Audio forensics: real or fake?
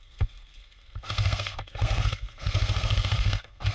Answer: fake